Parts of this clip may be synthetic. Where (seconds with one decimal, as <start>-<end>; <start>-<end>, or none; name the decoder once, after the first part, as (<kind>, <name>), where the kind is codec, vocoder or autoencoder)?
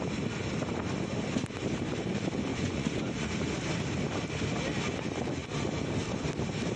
2.5-3.3 (vocoder, Vocos)